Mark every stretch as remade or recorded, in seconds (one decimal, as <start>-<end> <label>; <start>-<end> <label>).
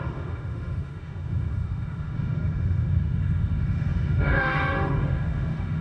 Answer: 0.0-5.8 remade